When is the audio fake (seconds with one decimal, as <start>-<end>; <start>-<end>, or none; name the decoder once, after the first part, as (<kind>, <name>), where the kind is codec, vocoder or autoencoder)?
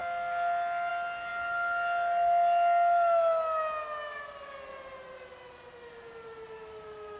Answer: none